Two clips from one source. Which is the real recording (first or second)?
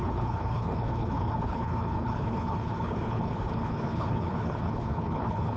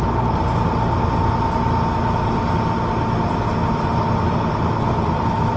second